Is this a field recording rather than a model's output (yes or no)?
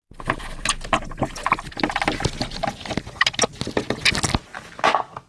yes